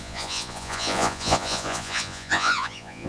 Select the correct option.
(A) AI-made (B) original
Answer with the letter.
A